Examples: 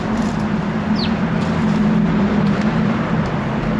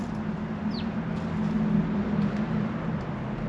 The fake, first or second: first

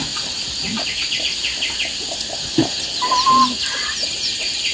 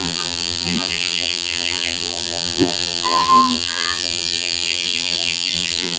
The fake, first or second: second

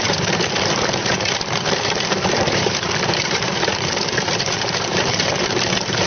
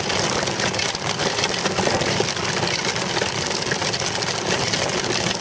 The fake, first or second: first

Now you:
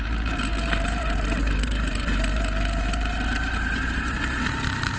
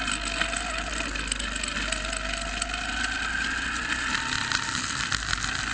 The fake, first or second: first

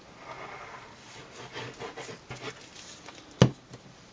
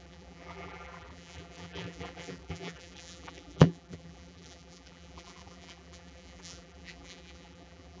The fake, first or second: second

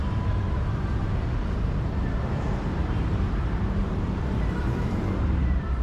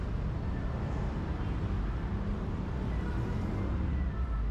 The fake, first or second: first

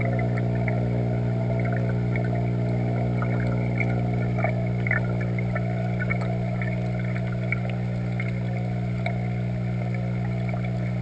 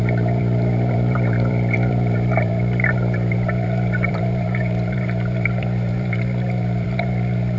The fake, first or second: second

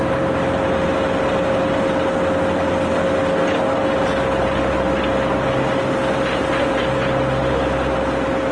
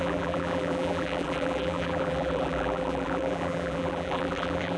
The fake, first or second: second